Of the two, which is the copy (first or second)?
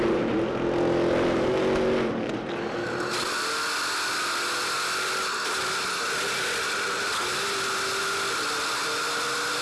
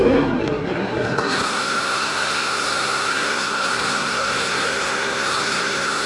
second